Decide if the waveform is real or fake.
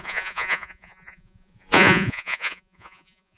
fake